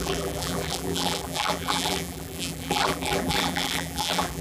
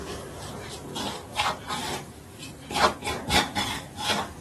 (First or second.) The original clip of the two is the second